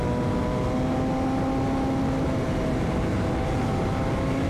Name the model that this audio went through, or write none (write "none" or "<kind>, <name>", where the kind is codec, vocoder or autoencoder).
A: none